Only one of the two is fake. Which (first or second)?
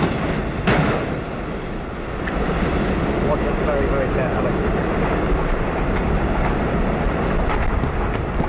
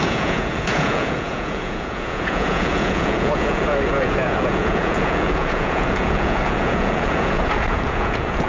second